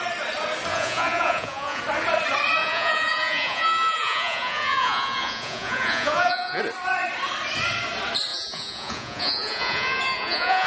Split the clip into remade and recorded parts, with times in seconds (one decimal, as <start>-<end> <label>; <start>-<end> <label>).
0.0-0.7 recorded; 0.7-1.8 remade; 1.8-2.6 recorded; 2.6-6.6 remade; 6.6-8.3 recorded; 8.3-10.7 remade